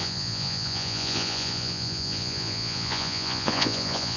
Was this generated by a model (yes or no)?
yes